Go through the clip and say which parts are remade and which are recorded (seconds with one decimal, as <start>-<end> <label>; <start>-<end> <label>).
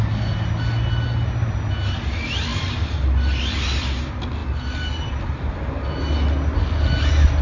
0.0-7.4 recorded